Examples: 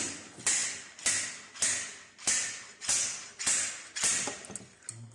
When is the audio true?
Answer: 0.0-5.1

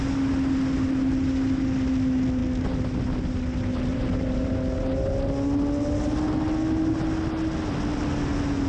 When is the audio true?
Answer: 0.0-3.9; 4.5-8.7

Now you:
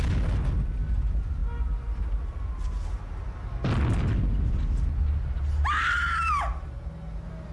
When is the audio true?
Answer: 0.0-7.5